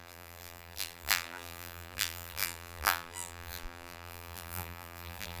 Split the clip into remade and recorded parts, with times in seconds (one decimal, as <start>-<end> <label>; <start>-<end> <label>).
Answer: 0.0-5.4 remade